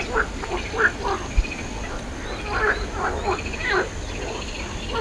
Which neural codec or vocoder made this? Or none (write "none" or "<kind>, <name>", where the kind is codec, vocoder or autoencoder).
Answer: none